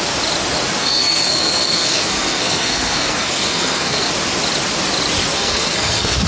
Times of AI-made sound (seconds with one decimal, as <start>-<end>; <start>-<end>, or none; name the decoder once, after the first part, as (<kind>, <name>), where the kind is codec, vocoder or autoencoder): 0.8-4.1 (codec, SNAC); 5.3-6.3